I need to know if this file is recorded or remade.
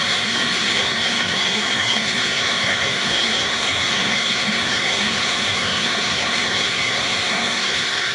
remade